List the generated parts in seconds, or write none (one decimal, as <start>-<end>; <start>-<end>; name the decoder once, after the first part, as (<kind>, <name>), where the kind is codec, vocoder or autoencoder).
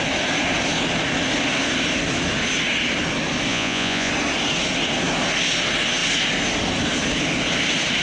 3.5-4.1 (vocoder, Vocos)